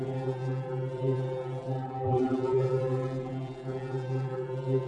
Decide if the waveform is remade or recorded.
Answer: remade